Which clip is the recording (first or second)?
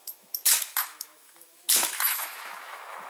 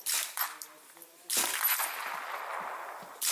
second